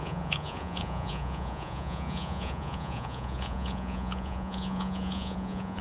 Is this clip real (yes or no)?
no